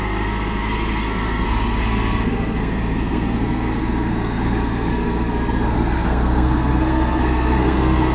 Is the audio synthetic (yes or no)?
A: yes